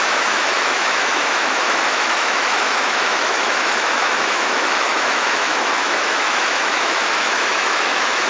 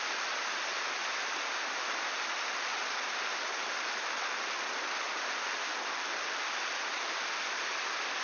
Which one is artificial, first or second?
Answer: first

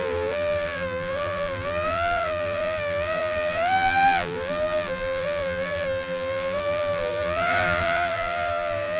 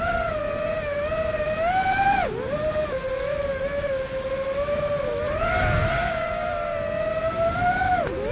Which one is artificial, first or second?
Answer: first